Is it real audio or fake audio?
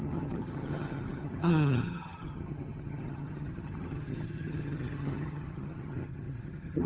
fake